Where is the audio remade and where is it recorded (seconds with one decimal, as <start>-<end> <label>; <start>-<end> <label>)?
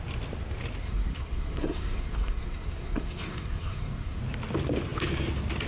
0.0-0.8 recorded; 0.8-4.2 remade; 4.2-5.7 recorded